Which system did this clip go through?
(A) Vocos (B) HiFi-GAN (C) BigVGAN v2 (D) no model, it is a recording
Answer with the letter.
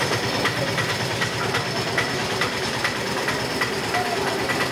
D